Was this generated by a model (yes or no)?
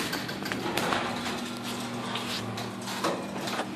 no